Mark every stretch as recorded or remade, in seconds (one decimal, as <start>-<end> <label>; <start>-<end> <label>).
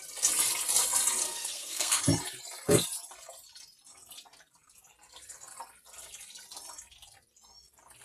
0.0-1.2 recorded; 1.2-2.0 remade; 2.0-8.0 recorded